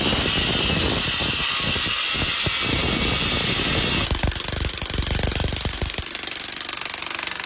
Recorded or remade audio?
recorded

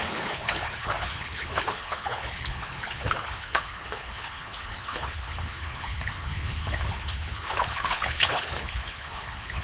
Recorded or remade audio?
remade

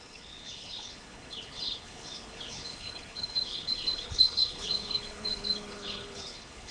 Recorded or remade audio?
remade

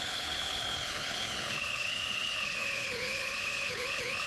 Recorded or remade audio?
remade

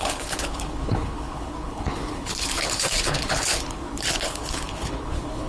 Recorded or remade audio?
remade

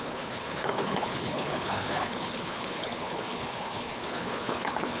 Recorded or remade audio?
remade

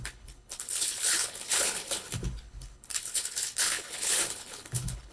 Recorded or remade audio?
remade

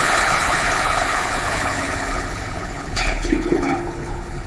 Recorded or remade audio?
remade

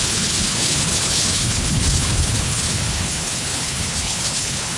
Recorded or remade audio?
remade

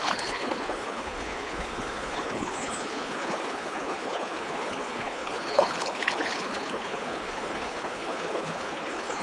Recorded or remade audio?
remade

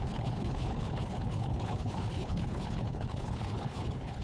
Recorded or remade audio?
remade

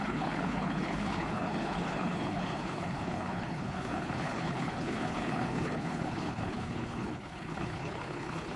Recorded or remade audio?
remade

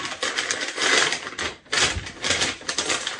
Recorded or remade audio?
recorded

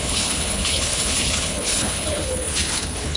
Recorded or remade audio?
remade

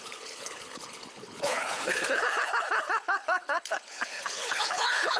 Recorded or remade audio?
remade